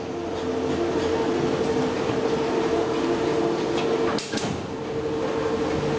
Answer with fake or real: real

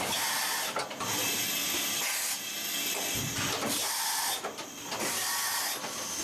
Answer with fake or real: real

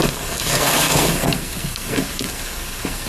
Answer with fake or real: fake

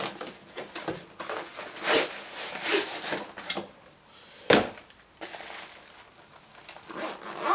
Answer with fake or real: real